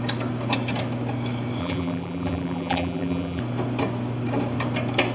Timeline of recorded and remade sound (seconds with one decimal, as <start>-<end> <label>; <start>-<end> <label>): 0.0-1.6 recorded; 1.6-3.4 remade; 3.4-5.1 recorded